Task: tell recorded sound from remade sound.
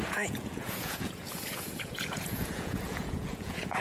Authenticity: remade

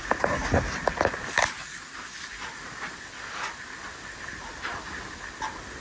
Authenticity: recorded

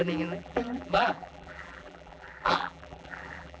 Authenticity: remade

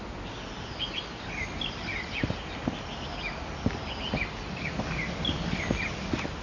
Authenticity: recorded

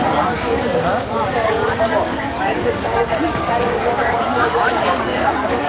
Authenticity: remade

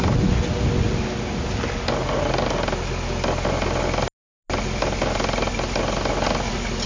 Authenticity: recorded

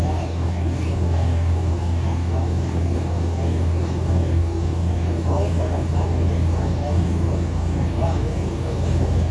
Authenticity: remade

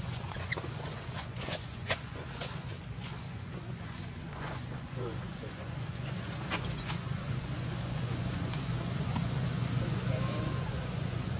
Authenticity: remade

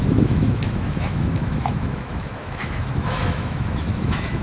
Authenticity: remade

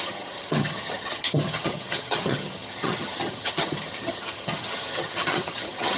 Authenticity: remade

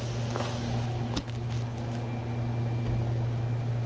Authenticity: recorded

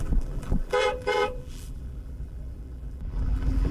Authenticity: remade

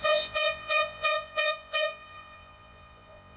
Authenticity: remade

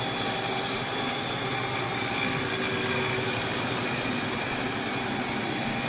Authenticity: recorded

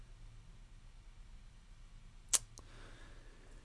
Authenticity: recorded